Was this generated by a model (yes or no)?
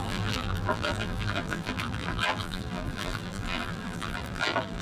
yes